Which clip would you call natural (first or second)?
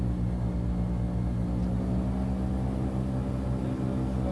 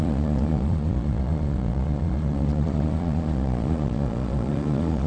first